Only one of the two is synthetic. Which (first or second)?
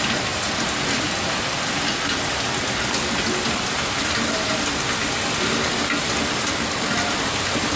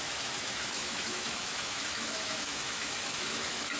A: second